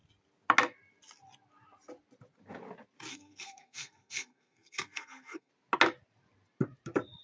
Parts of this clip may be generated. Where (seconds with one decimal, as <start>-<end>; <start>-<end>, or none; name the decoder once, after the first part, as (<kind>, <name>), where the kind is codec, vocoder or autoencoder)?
3.1-5.5 (codec, SNAC)